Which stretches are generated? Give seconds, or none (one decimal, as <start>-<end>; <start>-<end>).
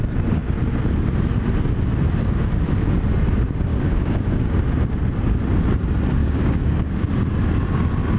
3.7-4.6; 6.2-7.1